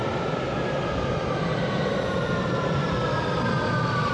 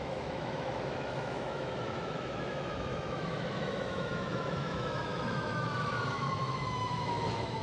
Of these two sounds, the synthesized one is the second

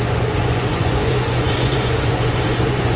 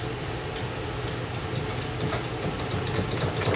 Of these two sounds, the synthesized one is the first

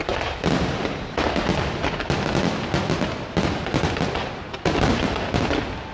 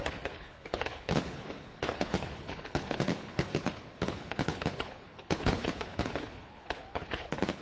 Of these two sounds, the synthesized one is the second